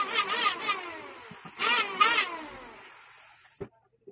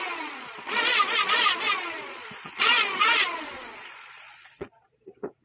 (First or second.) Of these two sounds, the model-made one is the second